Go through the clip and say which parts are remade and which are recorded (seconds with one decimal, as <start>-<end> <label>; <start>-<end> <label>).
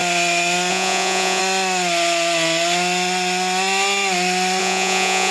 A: 0.0-0.7 recorded; 0.7-1.4 remade; 1.4-4.6 recorded; 4.6-5.3 remade